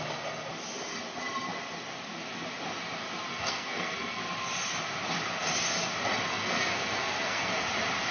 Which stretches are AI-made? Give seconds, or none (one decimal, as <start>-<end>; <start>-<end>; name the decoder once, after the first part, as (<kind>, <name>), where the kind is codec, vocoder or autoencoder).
3.3-4.2 (codec, SNAC); 6.3-7.5